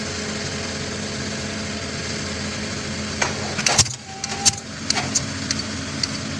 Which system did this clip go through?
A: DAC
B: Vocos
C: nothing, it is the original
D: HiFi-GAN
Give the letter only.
C